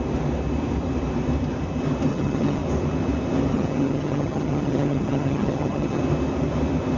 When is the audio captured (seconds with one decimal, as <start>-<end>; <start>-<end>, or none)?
0.0-2.1; 2.6-3.5; 6.0-7.0